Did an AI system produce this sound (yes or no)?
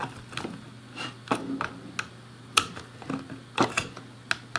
no